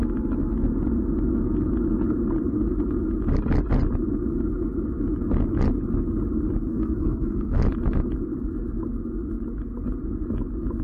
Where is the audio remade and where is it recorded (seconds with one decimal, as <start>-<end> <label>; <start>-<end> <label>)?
0.0-6.7 recorded; 6.7-7.6 remade; 7.6-10.8 recorded